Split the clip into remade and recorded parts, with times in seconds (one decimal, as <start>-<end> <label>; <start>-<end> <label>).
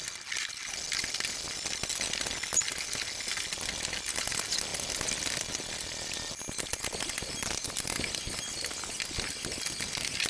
0.0-10.3 recorded